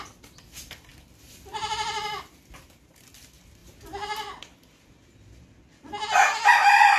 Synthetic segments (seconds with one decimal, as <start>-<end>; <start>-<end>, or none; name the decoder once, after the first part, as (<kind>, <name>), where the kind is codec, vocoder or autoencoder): 0.9-2.7 (vocoder, BigVGAN v2)